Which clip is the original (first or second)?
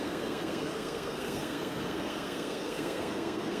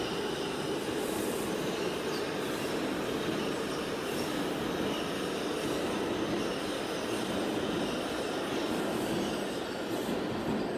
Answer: second